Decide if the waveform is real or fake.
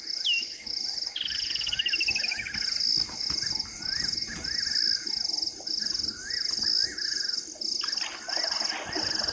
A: real